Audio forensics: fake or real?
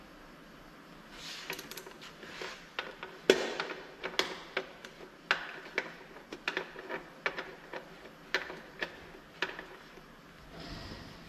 real